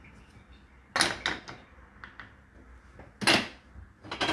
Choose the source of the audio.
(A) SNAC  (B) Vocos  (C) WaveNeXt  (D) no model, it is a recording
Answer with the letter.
D